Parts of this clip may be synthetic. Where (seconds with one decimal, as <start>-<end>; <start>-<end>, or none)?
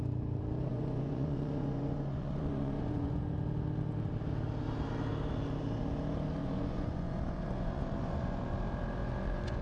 0.7-3.2; 6.4-8.6; 9.0-9.6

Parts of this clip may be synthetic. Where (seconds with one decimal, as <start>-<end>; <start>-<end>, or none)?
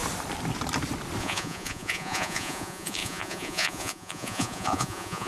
1.2-5.3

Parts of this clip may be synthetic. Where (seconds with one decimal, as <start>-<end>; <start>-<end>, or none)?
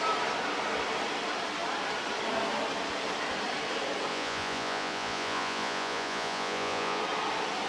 4.1-7.0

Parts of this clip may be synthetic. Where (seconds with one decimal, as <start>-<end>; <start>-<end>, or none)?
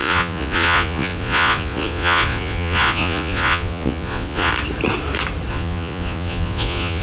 0.0-4.5; 5.5-7.0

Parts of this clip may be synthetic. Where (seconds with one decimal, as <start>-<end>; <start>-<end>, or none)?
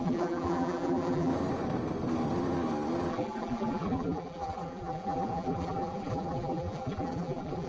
0.0-1.3; 3.1-7.7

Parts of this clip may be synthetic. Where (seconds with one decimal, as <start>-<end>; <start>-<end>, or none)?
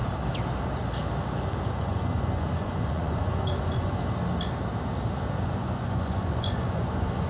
1.7-4.0; 5.4-7.3